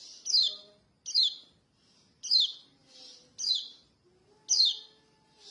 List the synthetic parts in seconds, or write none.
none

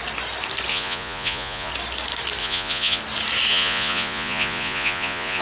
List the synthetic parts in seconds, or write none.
0.7-1.7; 2.4-3.0; 3.5-5.4

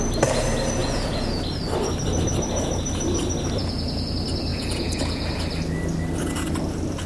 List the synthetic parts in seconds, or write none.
0.8-1.4; 3.6-4.1; 4.5-5.3

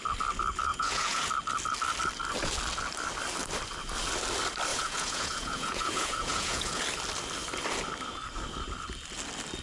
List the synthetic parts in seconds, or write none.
0.7-1.3; 4.7-6.8